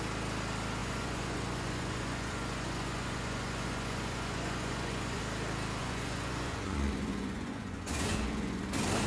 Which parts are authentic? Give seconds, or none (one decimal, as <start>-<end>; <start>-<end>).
0.0-0.8; 5.2-5.8; 8.6-9.1